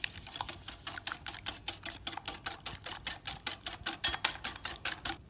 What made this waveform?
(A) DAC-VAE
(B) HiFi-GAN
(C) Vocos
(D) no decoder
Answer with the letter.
D